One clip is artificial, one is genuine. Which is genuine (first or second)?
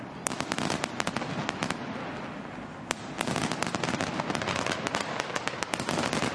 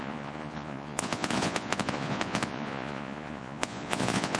first